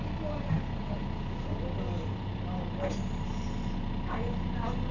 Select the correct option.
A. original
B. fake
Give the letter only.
A